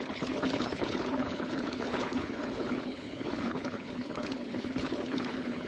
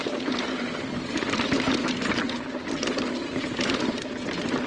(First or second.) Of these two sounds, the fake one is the first